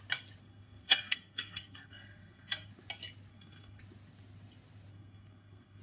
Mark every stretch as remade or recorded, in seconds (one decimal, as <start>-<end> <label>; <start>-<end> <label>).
0.0-0.4 recorded; 0.4-2.7 remade; 2.7-3.3 recorded; 3.3-3.8 remade; 3.8-4.9 recorded; 4.9-5.8 remade